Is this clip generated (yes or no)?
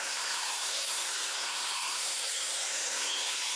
yes